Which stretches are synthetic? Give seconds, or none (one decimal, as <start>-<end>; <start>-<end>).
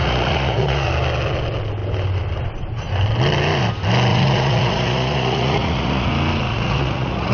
0.0-0.9; 4.1-6.1; 6.5-7.3